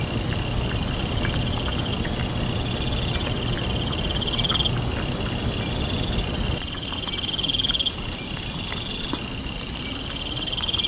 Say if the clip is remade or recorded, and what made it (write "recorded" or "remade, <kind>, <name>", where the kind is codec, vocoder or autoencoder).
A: recorded